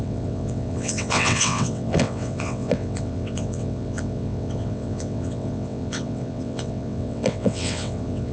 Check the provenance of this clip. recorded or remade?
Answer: remade